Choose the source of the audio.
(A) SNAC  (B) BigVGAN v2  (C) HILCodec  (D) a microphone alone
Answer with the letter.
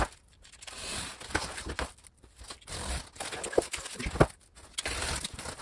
D